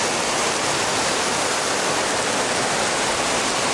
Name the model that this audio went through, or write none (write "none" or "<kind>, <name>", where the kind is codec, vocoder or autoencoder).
none